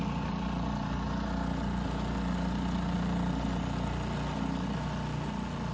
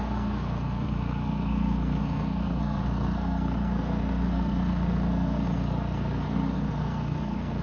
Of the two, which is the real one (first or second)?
first